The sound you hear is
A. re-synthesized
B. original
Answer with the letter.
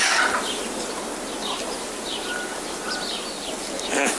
B